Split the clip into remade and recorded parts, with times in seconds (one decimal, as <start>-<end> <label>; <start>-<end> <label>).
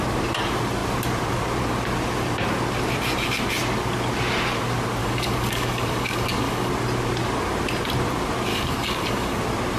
0.0-5.0 recorded; 5.0-6.7 remade; 6.7-8.5 recorded; 8.5-9.4 remade; 9.4-9.8 recorded